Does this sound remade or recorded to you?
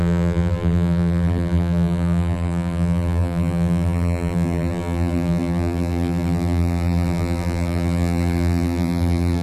remade